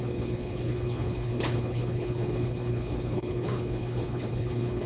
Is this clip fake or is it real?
fake